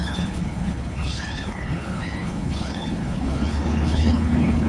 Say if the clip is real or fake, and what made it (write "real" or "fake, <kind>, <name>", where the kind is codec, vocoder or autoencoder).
fake, codec, HILCodec